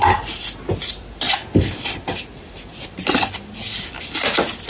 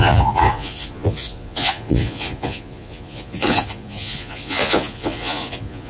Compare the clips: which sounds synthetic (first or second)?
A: second